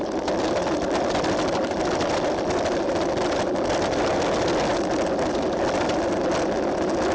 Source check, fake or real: real